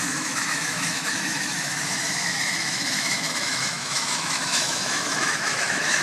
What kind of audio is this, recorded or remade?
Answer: remade